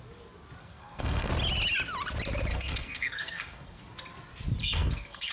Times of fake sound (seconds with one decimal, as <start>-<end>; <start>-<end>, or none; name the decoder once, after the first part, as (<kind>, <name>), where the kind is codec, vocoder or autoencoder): 0.6-1.3 (codec, SNAC); 2.5-3.8; 4.6-5.3